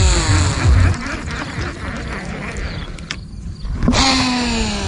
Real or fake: real